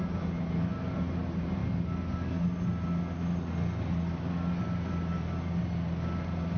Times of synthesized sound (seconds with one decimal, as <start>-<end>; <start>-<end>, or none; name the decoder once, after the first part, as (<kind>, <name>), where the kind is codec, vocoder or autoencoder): none